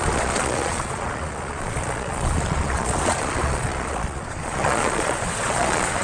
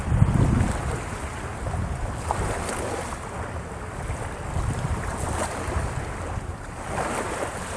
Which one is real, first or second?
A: second